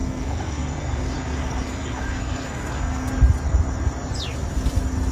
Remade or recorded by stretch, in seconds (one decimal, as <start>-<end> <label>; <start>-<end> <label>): 0.0-3.1 remade; 3.1-5.1 recorded